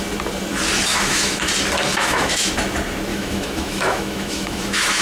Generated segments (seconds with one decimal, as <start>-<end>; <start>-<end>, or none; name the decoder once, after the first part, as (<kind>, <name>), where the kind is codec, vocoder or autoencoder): 0.9-1.5 (autoencoder, DAC-VAE); 1.9-2.5; 3.1-5.0